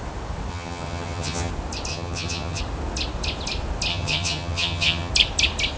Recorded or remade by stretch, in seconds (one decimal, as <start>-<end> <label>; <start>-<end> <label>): 0.0-0.5 recorded; 0.5-1.5 remade; 1.5-1.9 recorded; 1.9-2.6 remade; 2.6-3.9 recorded; 3.9-5.1 remade; 5.1-5.8 recorded